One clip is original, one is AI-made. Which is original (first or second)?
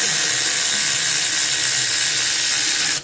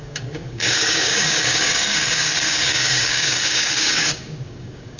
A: first